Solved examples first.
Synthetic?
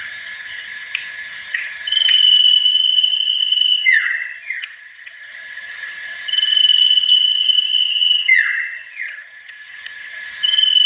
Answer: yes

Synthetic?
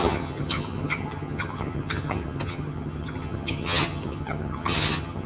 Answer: yes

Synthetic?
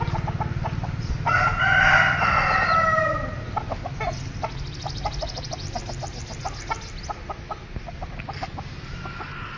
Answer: no